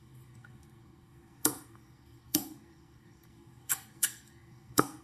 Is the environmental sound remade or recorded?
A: remade